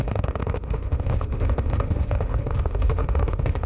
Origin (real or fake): fake